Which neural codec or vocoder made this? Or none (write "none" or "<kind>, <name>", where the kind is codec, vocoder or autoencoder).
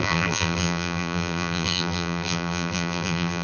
vocoder, BigVGAN v2